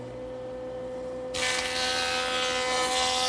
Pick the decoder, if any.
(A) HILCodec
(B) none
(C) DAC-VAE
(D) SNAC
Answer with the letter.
B